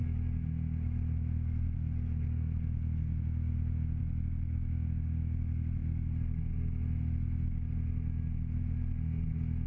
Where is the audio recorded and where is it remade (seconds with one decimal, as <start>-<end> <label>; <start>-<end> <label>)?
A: 0.0-9.7 recorded